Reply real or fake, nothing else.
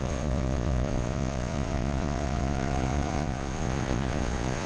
fake